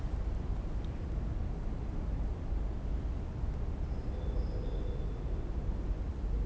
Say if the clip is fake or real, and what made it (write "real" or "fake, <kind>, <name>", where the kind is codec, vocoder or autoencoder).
real